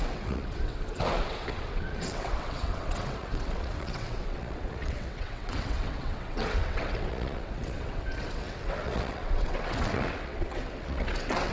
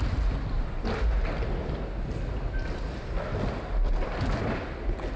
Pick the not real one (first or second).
first